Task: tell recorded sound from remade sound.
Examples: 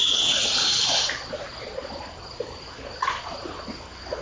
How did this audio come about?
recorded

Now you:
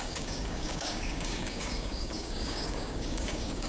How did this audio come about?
remade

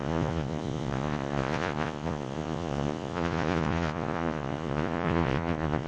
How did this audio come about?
remade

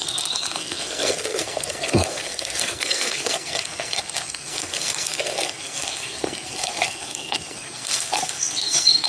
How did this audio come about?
remade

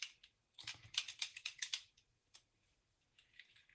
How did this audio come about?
recorded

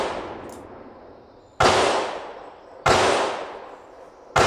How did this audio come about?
recorded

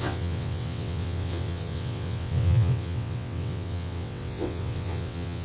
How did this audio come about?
remade